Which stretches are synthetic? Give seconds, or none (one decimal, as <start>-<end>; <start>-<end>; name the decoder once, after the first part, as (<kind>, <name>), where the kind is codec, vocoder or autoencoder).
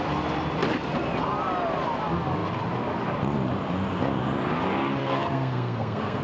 5.0-6.2 (codec, SNAC)